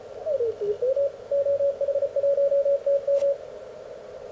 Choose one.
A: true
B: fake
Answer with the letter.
A